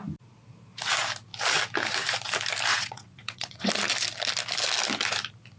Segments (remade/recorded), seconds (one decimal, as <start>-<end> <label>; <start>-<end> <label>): 0.0-2.7 recorded; 2.7-3.7 remade; 3.7-5.6 recorded